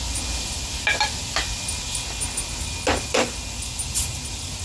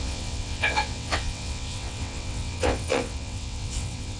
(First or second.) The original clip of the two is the first